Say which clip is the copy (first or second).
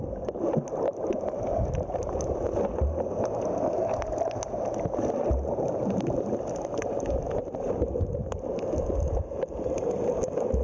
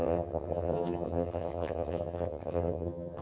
second